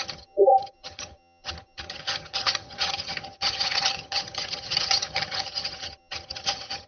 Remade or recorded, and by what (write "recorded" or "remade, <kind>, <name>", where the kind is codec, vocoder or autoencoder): remade, vocoder, HiFi-GAN